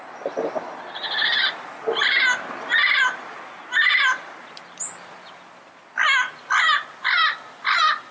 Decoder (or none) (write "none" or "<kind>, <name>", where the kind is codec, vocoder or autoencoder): none